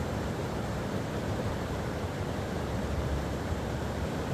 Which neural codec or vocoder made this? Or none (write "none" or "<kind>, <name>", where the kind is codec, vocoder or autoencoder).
vocoder, BigVGAN v2